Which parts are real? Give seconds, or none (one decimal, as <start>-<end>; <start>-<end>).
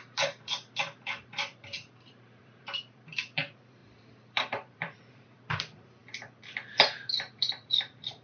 6.0-7.3